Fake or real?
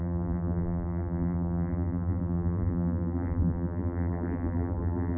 fake